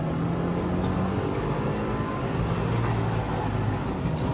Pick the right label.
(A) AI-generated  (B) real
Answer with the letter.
B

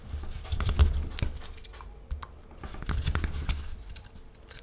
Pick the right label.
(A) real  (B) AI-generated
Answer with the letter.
A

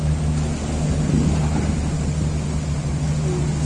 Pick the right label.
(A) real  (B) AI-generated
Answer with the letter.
A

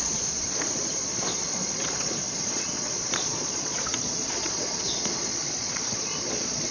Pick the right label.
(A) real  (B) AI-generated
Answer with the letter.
B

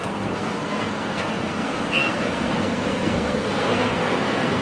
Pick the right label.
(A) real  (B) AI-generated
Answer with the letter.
B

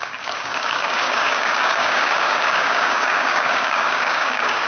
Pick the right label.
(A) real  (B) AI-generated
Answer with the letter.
B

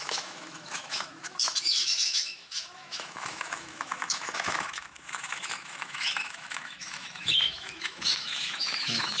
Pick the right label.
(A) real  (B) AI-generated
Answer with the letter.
B